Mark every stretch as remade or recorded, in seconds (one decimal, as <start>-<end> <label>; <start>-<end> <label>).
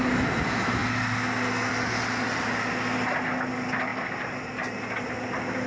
0.0-5.7 recorded